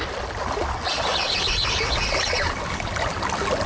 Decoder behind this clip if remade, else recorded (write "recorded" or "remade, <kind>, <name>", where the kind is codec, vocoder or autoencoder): recorded